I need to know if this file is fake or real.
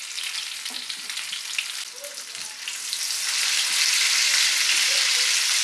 real